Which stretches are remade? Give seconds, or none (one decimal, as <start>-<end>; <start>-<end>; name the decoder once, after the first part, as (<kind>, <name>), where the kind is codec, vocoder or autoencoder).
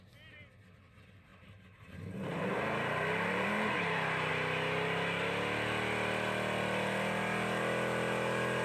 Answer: 1.3-4.3 (vocoder, BigVGAN v2)